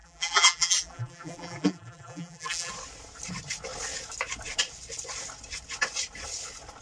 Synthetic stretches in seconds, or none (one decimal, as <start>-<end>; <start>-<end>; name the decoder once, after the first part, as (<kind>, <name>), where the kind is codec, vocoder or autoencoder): 0.0-2.7 (vocoder, BigVGAN v2)